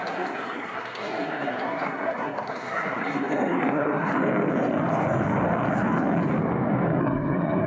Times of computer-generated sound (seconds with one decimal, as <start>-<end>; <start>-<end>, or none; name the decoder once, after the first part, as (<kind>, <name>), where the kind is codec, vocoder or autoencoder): 0.0-4.1 (codec, SNAC); 7.0-7.7